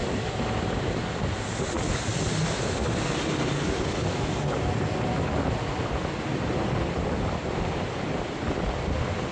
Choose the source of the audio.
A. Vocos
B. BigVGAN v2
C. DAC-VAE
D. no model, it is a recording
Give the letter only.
D